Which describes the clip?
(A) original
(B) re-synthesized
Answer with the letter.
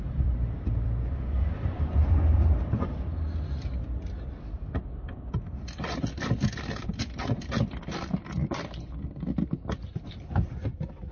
B